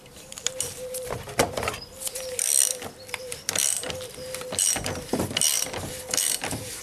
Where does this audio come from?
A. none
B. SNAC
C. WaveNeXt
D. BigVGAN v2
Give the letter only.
D